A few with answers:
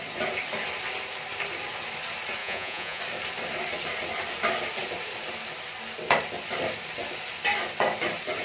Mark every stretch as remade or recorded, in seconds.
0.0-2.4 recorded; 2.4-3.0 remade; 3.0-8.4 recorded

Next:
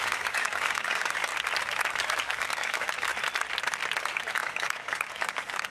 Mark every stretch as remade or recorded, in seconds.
0.0-1.3 remade; 1.3-1.9 recorded; 1.9-3.1 remade; 3.1-4.0 recorded; 4.0-5.7 remade